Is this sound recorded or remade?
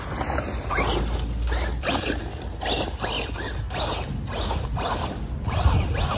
recorded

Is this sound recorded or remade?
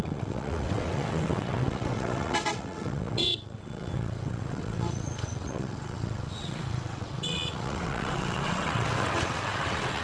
remade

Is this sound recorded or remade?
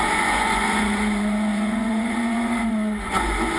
remade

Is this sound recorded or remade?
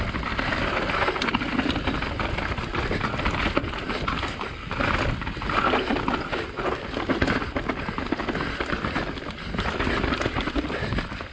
recorded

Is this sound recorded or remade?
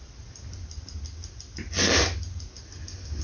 recorded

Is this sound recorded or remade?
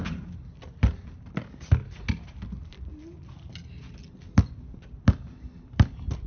recorded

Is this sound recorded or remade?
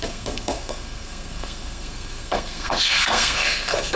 remade